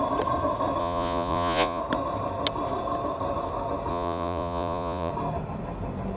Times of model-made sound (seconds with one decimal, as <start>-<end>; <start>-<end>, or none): 0.8-1.8; 3.9-5.1